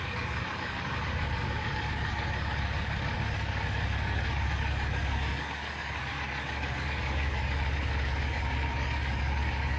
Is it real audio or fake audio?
fake